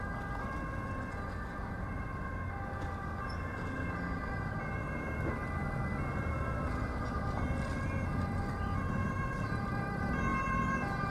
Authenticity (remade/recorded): recorded